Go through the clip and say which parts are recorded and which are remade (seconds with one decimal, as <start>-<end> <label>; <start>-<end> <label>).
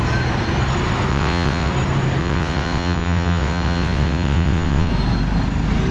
0.0-1.1 recorded; 1.1-1.7 remade; 1.7-2.2 recorded; 2.2-4.9 remade; 4.9-5.9 recorded